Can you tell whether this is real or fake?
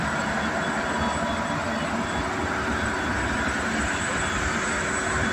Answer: real